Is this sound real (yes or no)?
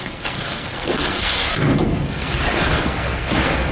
no